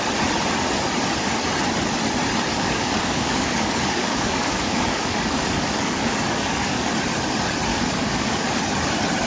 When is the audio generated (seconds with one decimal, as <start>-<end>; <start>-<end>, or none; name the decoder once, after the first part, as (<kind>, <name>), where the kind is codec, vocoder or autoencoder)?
2.5-6.9 (codec, DAC); 7.7-8.6